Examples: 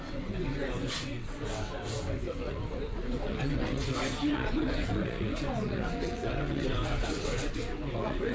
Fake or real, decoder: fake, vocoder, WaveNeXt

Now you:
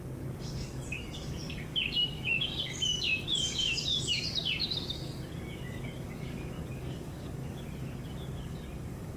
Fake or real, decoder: fake, codec, DAC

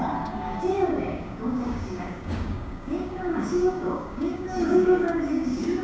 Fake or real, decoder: fake, codec, DAC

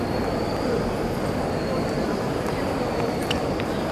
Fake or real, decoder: real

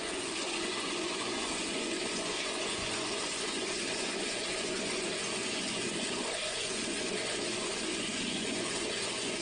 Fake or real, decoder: fake, vocoder, Vocos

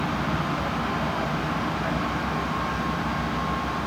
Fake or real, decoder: real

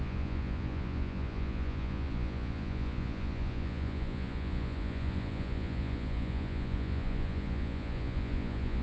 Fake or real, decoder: fake, vocoder, Vocos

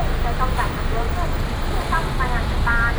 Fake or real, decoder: real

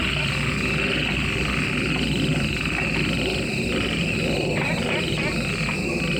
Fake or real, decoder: real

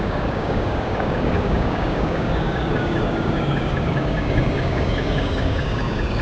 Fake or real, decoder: fake, codec, DAC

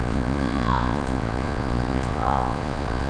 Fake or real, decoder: fake, vocoder, Vocos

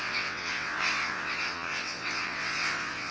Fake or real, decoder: fake, vocoder, WaveNeXt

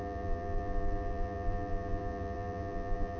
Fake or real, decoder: fake, vocoder, BigVGAN v2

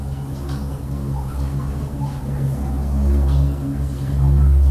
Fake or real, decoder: fake, codec, SNAC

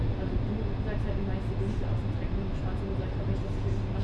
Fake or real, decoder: real